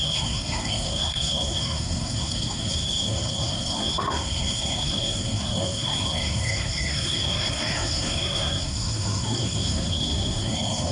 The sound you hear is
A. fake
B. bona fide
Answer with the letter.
A